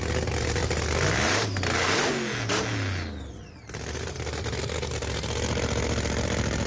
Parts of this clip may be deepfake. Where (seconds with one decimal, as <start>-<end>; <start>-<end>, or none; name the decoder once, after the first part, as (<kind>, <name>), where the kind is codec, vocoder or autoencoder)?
none

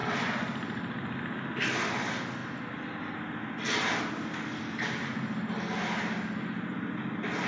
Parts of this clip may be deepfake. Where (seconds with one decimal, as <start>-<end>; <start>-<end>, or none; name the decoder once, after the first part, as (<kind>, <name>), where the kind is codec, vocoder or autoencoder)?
none